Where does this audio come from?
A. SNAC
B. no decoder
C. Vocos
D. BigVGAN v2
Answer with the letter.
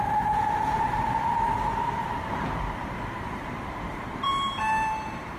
D